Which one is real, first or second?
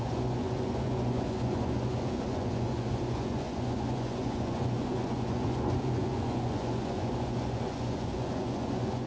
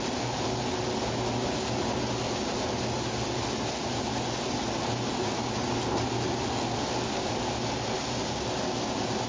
second